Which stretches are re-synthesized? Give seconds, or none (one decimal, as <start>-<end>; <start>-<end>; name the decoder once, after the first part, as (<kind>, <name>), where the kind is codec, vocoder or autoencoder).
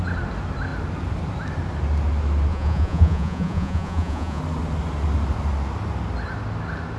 2.5-4.4 (vocoder, Vocos)